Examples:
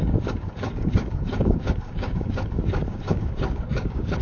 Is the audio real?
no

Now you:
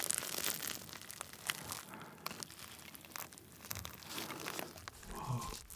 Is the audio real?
yes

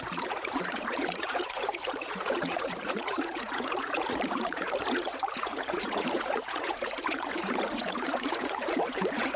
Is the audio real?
no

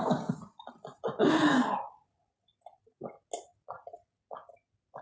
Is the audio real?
yes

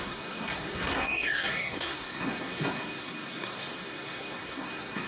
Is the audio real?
no